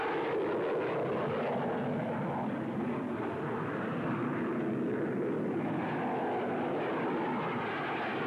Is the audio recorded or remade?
recorded